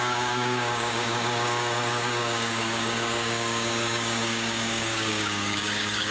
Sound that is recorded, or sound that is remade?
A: remade